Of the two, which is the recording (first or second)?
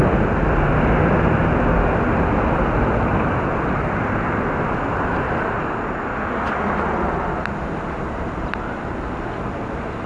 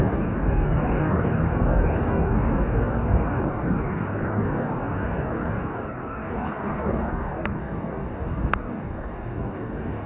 first